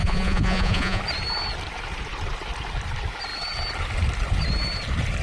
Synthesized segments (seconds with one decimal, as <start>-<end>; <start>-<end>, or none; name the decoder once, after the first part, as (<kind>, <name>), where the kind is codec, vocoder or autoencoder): 0.0-1.0 (vocoder, Vocos)